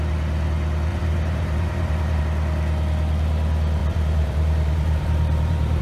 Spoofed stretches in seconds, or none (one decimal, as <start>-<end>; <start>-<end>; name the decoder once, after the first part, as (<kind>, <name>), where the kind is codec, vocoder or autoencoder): 0.9-2.2 (vocoder, BigVGAN v2); 3.8-5.8